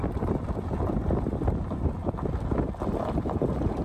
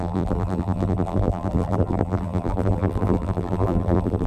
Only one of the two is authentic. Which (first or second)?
first